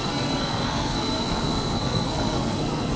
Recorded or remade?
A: remade